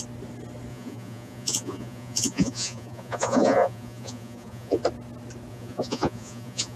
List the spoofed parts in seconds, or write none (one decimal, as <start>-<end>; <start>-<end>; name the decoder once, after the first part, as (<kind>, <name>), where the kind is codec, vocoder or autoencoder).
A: 0.7-4.8 (vocoder, Vocos); 5.5-6.8